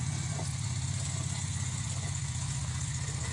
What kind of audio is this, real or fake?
fake